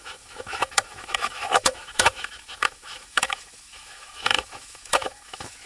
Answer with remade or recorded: remade